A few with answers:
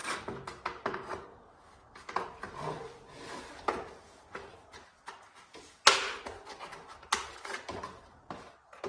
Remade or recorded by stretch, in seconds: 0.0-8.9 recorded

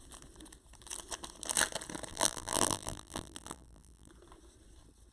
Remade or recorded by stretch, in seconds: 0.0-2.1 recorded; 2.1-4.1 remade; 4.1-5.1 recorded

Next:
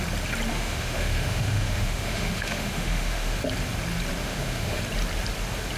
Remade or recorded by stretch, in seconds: 0.0-0.5 recorded; 0.5-3.4 remade; 3.4-4.2 recorded; 4.2-4.8 remade; 4.8-5.8 recorded

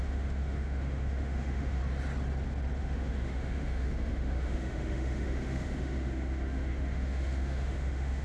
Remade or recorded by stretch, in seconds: 0.0-1.8 remade; 1.8-2.8 recorded; 2.8-8.2 remade

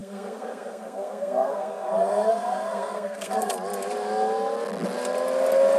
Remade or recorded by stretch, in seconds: 0.0-3.5 remade; 3.5-5.8 recorded

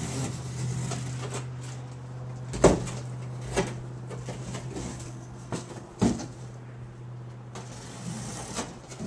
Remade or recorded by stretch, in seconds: 0.0-4.9 recorded; 4.9-5.7 remade; 5.7-9.1 recorded

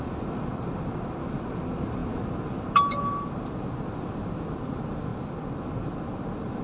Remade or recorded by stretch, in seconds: 0.0-6.6 recorded